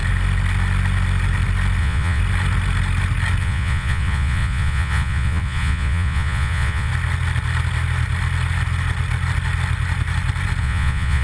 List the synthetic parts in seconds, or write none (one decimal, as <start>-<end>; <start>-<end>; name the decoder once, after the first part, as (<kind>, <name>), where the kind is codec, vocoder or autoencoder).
1.8-2.2 (vocoder, Vocos); 3.4-6.9; 10.6-11.2